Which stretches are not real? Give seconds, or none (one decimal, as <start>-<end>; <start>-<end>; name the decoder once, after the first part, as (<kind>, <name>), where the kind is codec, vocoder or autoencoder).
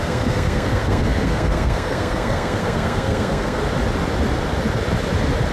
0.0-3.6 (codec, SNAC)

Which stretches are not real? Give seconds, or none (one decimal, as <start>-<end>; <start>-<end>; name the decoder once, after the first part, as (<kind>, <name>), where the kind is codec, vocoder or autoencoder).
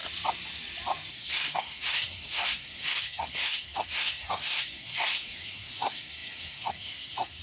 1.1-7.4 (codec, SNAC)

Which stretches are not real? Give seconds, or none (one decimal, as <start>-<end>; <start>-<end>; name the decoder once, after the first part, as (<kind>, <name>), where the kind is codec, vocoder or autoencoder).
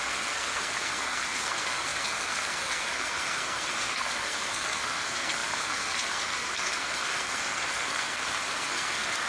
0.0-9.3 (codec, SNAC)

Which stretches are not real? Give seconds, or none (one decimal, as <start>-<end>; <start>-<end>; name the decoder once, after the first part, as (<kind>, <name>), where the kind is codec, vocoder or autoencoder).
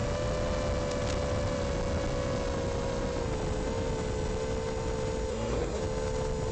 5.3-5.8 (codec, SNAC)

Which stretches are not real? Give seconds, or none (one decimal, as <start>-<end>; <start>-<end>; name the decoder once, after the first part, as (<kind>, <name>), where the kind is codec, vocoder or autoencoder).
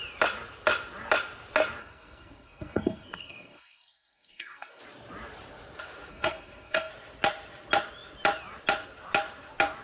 1.8-4.8 (codec, SNAC); 6.1-6.9